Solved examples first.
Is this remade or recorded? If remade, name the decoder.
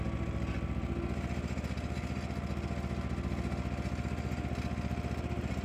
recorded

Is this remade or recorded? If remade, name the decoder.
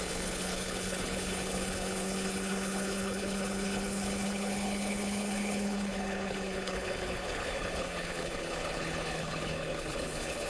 remade, codec, HILCodec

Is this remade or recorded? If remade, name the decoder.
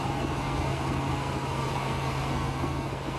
remade, codec, SNAC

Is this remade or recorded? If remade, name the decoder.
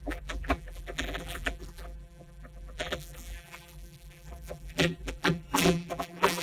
remade, vocoder, BigVGAN v2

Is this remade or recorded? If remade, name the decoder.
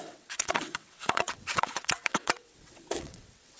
remade, vocoder, WaveNeXt